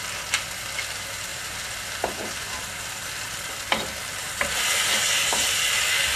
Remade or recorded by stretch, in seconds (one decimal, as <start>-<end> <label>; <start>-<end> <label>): 0.0-1.3 recorded; 1.3-5.0 remade; 5.0-6.2 recorded